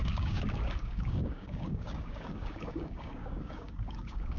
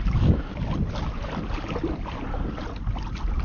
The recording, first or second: second